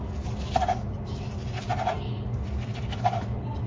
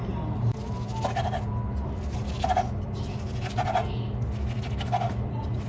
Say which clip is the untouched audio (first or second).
second